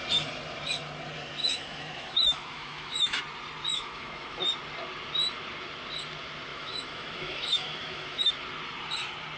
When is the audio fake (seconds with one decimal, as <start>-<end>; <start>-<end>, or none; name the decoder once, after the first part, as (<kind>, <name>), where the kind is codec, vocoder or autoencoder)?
1.4-3.2 (autoencoder, DAC-VAE); 3.7-4.4; 6.5-8.3